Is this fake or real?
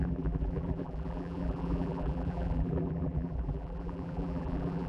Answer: fake